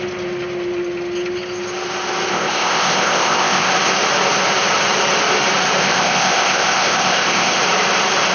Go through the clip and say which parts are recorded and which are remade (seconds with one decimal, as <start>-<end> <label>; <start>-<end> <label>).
0.0-2.3 recorded; 2.3-3.7 remade; 3.7-5.8 recorded; 5.8-7.6 remade; 7.6-8.3 recorded